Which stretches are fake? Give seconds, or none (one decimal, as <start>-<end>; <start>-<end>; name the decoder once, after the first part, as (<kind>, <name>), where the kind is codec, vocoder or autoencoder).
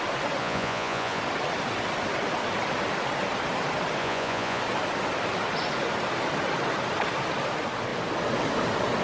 0.4-1.2 (vocoder, Vocos); 4.0-4.6